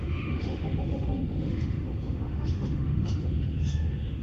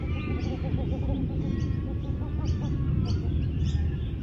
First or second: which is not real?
first